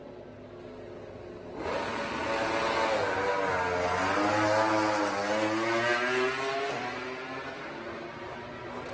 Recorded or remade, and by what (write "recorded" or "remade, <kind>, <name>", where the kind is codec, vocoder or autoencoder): recorded